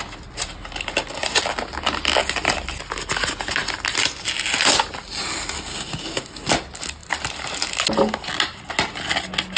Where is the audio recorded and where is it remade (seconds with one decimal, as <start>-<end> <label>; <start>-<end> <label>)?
0.0-9.6 recorded